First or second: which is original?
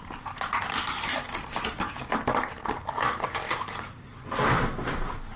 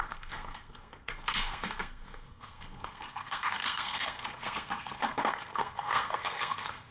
first